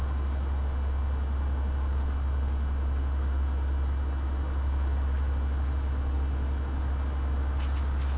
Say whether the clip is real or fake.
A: real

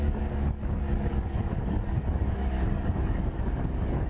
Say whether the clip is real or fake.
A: fake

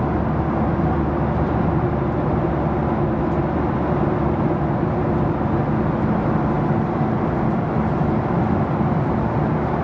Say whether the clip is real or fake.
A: real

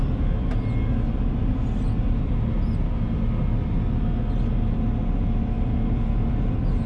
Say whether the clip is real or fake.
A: real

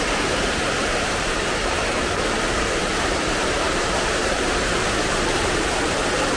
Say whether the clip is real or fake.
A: fake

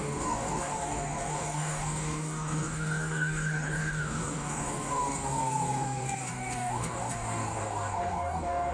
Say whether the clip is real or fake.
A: fake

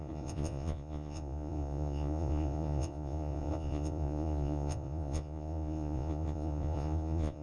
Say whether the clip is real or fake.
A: fake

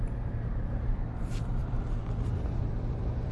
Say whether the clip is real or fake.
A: fake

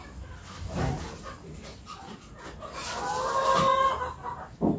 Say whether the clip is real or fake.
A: real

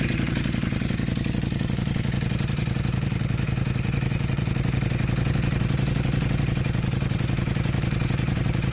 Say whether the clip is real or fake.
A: fake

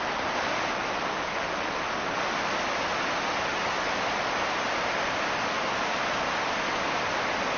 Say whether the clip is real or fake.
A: real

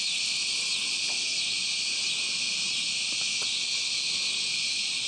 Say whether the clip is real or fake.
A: real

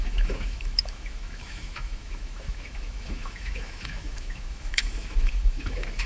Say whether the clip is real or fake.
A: fake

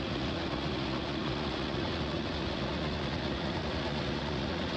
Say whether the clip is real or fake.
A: fake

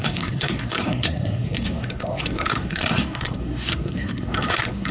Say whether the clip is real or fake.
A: fake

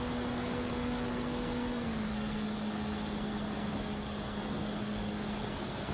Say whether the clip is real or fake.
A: fake